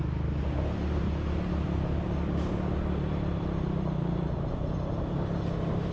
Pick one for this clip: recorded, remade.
recorded